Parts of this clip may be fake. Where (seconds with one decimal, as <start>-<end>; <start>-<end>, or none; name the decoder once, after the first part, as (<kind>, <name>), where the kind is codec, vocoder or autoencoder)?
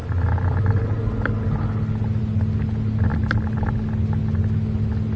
none